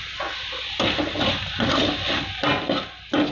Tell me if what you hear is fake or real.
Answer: real